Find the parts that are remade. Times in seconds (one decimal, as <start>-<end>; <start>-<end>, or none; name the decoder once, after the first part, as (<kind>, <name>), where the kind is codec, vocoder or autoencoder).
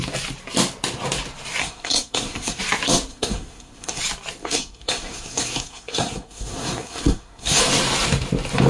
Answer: 1.6-2.6 (codec, SNAC); 3.1-4.0; 4.4-7.6